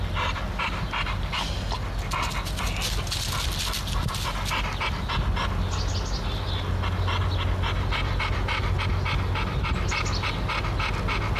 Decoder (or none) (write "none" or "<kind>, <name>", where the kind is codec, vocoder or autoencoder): none